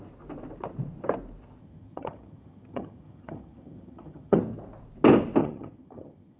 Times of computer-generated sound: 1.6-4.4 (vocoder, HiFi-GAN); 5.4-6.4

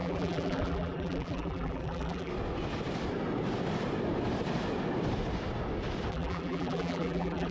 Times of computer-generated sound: 0.0-2.3 (vocoder, BigVGAN v2); 6.1-7.5